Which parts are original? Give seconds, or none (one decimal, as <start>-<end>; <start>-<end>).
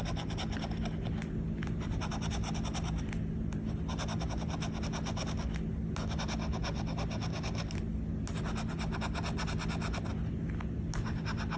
0.0-11.6